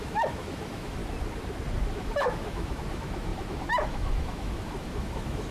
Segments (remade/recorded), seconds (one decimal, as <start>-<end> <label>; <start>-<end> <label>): 0.0-1.0 remade; 1.0-1.9 recorded; 1.9-5.5 remade